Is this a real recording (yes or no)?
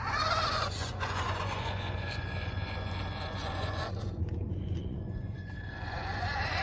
no